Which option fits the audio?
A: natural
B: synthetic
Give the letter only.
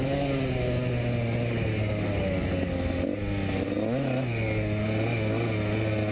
A